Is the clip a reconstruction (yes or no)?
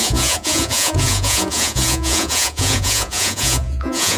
yes